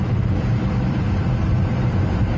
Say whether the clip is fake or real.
fake